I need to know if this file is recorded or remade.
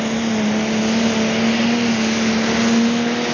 recorded